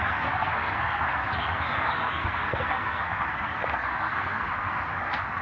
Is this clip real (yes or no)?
no